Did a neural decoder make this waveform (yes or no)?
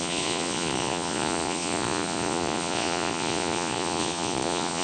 yes